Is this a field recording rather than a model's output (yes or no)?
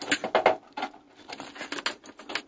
yes